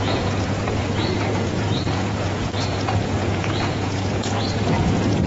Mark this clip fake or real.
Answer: fake